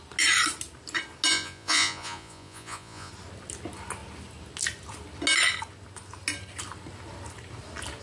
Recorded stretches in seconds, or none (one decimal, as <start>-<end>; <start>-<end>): 0.0-1.3; 3.1-8.0